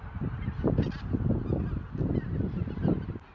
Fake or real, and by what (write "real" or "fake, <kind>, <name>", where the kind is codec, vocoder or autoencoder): real